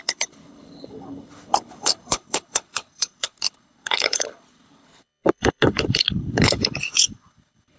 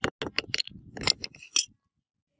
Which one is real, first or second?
second